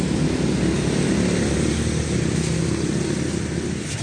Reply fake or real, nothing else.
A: real